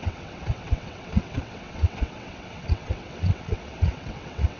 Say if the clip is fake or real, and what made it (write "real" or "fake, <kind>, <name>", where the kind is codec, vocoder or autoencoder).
fake, vocoder, WaveNeXt